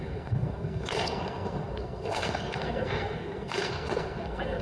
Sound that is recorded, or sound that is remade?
remade